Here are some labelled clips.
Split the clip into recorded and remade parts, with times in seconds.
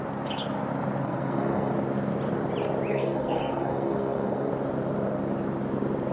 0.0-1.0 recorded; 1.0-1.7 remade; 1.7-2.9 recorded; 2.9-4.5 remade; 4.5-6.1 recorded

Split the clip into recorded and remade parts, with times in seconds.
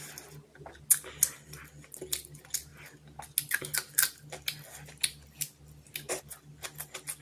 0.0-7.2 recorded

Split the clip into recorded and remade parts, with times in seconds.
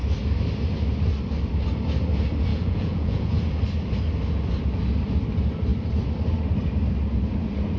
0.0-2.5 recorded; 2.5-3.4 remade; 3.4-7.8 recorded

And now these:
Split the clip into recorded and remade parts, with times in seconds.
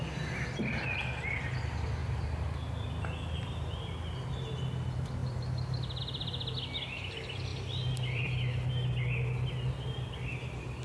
0.0-2.0 recorded; 2.0-4.1 remade; 4.1-7.5 recorded; 7.5-8.7 remade; 8.7-10.8 recorded